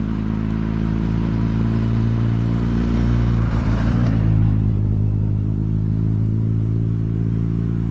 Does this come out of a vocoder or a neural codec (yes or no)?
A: no